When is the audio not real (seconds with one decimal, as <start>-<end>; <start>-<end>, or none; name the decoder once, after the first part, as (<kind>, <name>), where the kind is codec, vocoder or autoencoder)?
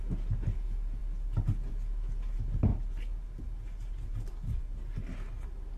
none